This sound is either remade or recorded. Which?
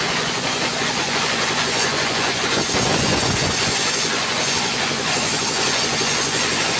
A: remade